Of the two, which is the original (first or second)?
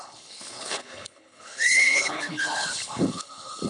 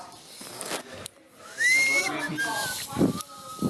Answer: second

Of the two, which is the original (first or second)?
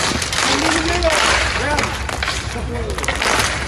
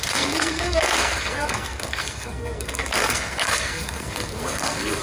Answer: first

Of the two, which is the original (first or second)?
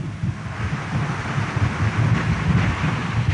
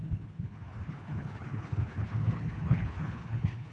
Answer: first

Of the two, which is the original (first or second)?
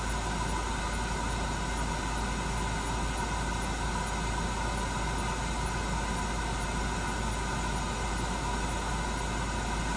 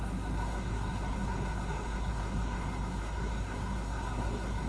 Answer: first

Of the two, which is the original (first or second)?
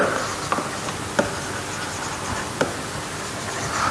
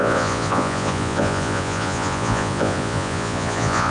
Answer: first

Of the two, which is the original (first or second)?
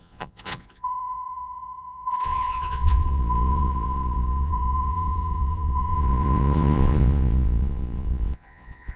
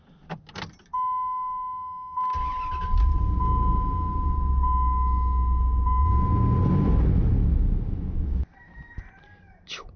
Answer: second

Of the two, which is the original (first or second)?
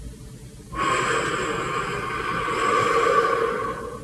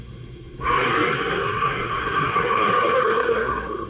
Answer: first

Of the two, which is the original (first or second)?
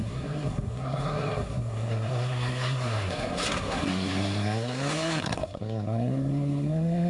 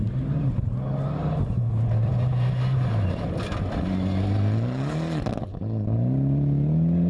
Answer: second